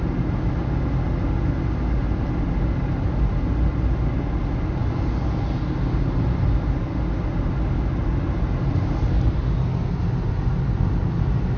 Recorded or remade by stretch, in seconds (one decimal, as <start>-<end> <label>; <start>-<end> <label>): 0.0-11.6 recorded